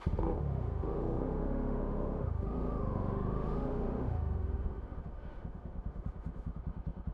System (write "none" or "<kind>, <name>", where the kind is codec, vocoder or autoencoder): autoencoder, DAC-VAE